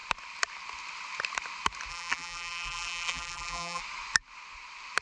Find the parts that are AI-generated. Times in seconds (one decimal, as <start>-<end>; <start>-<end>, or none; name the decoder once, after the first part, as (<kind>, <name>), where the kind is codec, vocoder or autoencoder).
1.9-3.8 (vocoder, BigVGAN v2)